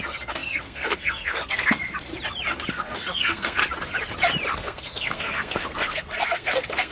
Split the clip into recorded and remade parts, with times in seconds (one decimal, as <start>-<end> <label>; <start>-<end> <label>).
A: 0.0-2.1 remade; 2.1-2.7 recorded; 2.7-3.6 remade; 3.6-4.5 recorded; 4.5-6.9 remade